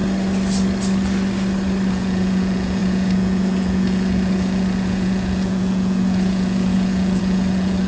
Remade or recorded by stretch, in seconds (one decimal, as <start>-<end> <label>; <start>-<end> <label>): 0.0-1.9 recorded; 1.9-7.9 remade